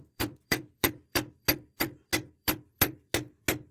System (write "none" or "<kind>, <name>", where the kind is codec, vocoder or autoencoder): vocoder, BigVGAN v2